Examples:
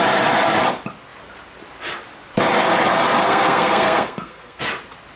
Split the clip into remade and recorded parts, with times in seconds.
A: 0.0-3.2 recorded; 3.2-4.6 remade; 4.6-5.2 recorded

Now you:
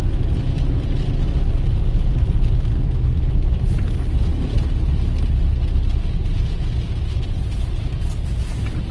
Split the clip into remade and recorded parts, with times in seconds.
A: 0.0-2.7 recorded; 2.7-3.3 remade; 3.3-8.9 recorded